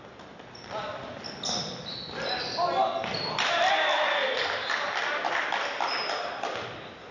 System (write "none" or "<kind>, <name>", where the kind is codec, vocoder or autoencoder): none